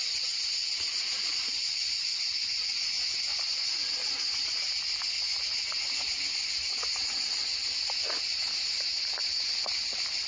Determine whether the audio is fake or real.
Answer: real